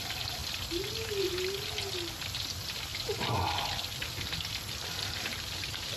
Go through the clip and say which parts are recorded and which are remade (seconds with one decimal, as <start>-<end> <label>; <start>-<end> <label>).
0.0-6.0 recorded